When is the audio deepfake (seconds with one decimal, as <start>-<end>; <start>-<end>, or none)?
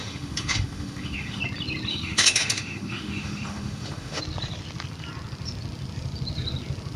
0.0-1.4; 1.9-4.2